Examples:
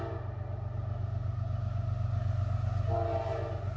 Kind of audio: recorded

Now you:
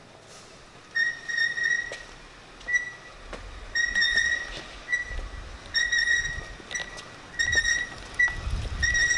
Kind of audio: recorded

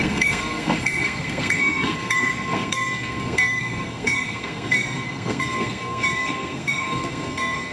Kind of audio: remade